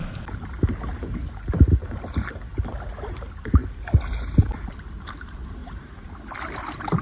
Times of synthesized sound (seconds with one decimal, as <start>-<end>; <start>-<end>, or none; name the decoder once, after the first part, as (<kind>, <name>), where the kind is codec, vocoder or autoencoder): 5.6-6.1 (vocoder, BigVGAN v2)

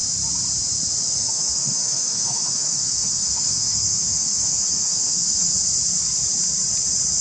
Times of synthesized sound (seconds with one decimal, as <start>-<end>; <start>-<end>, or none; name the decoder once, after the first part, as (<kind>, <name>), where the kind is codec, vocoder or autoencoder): 1.2-5.5 (autoencoder, DAC-VAE)

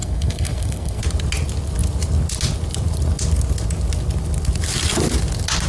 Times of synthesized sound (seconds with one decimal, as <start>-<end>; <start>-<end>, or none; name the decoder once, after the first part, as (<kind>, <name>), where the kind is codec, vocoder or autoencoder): 0.0-1.0 (codec, SNAC)

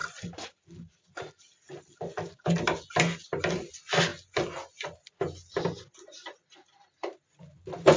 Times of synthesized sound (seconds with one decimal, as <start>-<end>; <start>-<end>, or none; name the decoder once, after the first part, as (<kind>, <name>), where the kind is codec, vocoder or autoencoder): 0.0-1.4 (vocoder, BigVGAN v2)

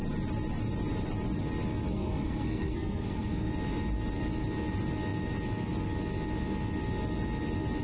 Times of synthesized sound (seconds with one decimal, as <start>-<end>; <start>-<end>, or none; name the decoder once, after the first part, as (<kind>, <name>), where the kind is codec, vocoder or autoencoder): 1.9-3.5 (codec, SNAC)